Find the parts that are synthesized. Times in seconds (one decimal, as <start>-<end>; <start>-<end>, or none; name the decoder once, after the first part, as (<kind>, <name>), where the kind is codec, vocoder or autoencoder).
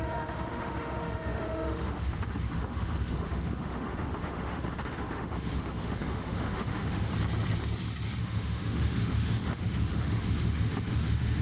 0.0-7.1 (autoencoder, DAC-VAE); 8.2-11.4